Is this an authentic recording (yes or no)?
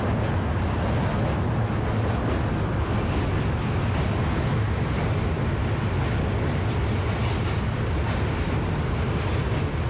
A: yes